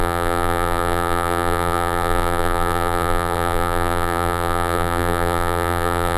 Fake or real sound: fake